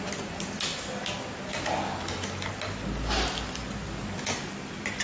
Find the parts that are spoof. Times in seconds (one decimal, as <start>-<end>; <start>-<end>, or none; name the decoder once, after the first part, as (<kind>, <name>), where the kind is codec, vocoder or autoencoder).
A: none